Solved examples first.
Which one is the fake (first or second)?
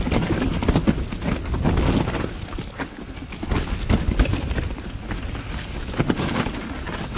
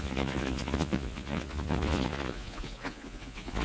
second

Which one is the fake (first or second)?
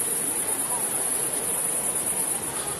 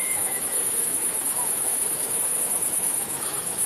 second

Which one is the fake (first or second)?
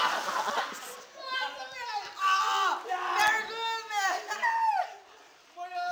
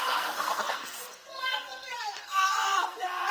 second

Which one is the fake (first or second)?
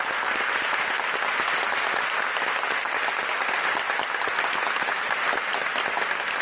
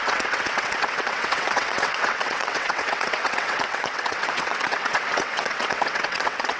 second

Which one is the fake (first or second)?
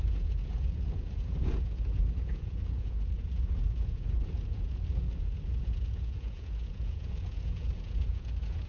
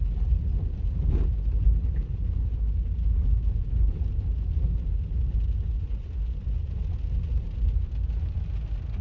first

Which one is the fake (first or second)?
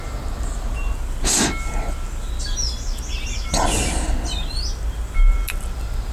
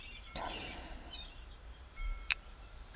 second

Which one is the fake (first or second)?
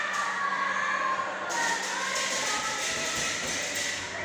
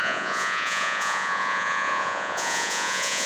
second